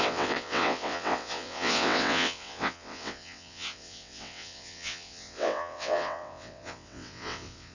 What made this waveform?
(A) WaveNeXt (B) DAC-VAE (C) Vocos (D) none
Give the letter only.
A